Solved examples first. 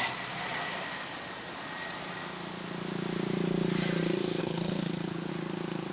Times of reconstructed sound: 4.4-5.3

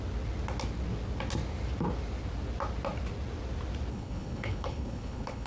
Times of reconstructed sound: 3.9-5.5

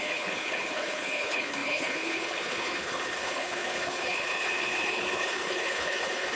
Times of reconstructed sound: 0.0-6.4